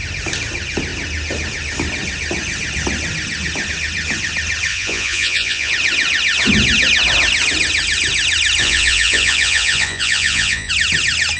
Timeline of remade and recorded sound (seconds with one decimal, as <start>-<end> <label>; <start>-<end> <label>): 0.0-4.7 recorded; 4.7-5.7 remade; 5.7-8.6 recorded; 8.6-10.7 remade; 10.7-11.4 recorded